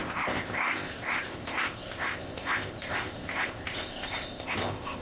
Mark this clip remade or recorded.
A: remade